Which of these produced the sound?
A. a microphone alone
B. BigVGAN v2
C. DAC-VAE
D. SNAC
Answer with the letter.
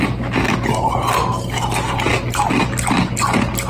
A